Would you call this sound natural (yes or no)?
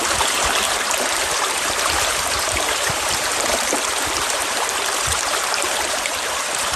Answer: no